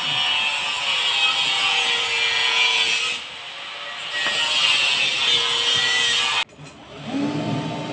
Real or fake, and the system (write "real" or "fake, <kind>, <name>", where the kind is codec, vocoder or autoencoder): real